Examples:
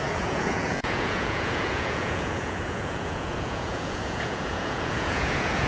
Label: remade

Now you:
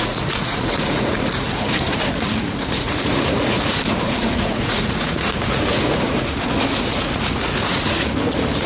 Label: remade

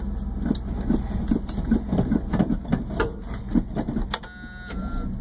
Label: recorded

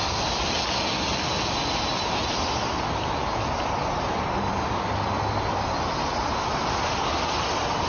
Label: recorded